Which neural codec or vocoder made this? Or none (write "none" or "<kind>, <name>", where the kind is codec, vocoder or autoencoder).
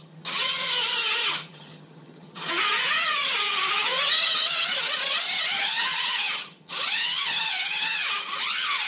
vocoder, HiFi-GAN